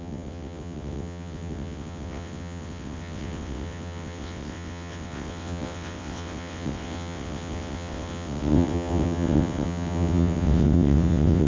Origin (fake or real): fake